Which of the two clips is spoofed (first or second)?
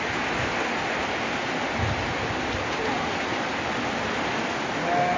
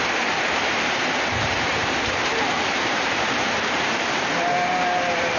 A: second